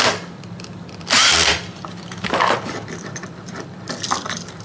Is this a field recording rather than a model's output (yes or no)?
no